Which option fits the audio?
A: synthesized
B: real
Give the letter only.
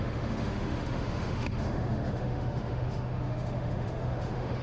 A